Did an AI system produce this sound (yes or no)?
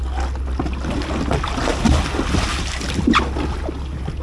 no